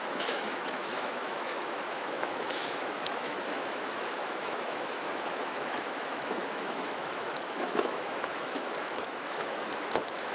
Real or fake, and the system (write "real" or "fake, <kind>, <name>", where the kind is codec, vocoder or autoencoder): fake, autoencoder, DAC-VAE